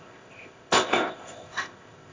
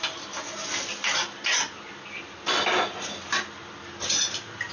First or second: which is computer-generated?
first